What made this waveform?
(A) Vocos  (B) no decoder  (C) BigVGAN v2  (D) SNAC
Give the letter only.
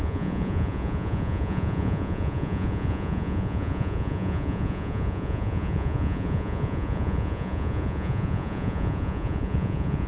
A